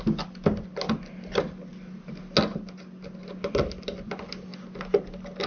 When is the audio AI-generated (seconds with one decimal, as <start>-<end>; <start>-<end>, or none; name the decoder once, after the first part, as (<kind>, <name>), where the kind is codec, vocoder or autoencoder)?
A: none